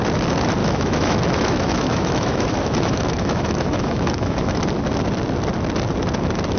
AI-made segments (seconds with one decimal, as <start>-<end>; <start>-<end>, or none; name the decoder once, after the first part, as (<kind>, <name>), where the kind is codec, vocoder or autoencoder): 0.6-4.6 (autoencoder, DAC-VAE)